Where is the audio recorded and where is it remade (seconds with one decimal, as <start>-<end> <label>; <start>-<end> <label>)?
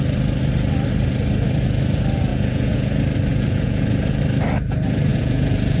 0.0-2.3 recorded; 2.3-2.9 remade; 2.9-3.3 recorded; 3.3-4.2 remade; 4.2-5.1 recorded; 5.1-5.8 remade